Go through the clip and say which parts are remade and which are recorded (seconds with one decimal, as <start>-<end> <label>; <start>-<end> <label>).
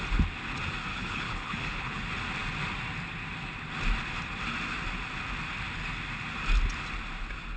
0.0-0.9 recorded; 0.9-2.0 remade; 2.0-7.6 recorded